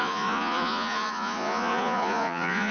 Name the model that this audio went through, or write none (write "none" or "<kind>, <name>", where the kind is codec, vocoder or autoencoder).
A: vocoder, Vocos